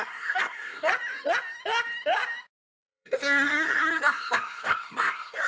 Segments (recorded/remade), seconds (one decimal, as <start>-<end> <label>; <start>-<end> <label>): 0.0-0.9 remade; 0.9-2.8 recorded; 2.8-5.5 remade